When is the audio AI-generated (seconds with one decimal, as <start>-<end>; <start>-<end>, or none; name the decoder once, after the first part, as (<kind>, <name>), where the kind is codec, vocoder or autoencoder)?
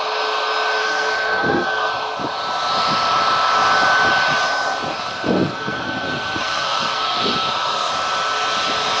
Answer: 0.8-1.9 (codec, SNAC); 4.9-7.9